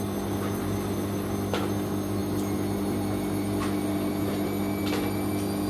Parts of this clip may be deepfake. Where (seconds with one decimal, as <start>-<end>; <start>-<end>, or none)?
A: none